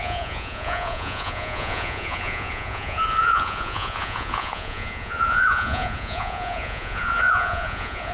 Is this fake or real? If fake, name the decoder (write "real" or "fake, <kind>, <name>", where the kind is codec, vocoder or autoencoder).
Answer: fake, vocoder, Vocos